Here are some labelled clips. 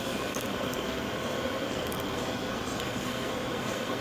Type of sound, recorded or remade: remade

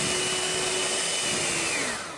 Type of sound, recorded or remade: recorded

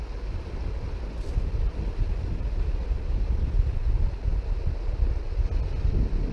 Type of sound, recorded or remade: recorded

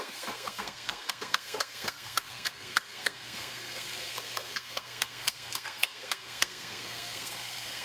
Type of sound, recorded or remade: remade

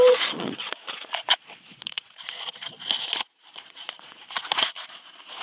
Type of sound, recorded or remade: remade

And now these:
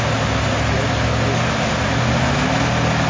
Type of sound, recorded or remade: recorded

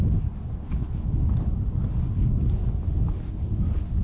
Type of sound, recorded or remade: recorded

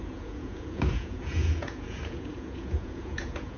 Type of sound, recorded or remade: remade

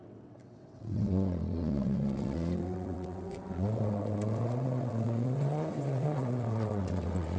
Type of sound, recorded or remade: remade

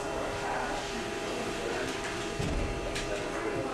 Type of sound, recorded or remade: recorded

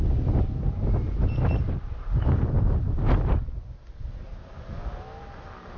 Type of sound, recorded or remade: recorded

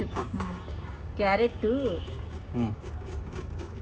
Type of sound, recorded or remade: remade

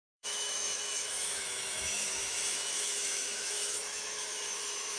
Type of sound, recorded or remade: remade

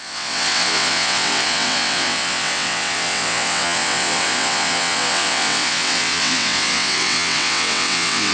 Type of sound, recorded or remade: remade